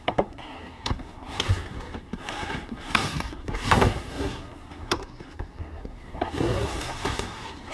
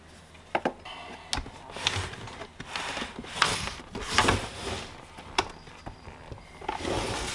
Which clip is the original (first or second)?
second